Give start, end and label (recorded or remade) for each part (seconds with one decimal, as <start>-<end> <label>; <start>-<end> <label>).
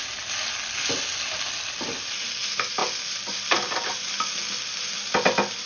0.0-5.7 recorded